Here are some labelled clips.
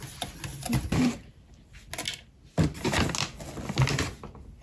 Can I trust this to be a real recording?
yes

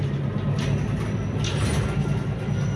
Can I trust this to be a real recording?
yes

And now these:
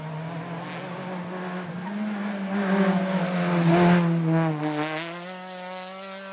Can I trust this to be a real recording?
yes